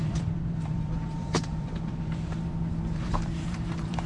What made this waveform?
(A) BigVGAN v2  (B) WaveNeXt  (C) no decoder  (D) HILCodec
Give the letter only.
A